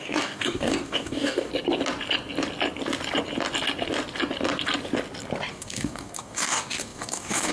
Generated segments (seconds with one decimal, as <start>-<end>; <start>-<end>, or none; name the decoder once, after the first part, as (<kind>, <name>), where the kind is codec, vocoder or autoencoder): 0.0-1.5 (codec, DAC); 5.5-7.5